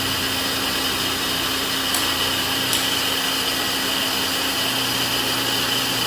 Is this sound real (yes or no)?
yes